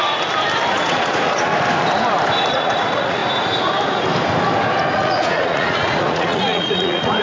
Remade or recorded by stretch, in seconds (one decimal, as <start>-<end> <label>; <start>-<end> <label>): 0.0-0.7 recorded; 0.7-1.5 remade; 1.5-2.5 recorded; 2.5-3.2 remade; 3.2-4.9 recorded; 4.9-7.2 remade

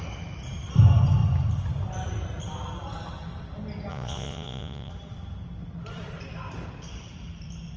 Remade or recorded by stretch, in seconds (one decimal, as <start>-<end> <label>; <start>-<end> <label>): 0.0-3.9 recorded; 3.9-4.9 remade; 4.9-7.8 recorded